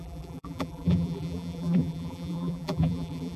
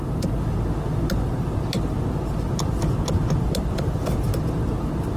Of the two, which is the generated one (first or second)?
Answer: first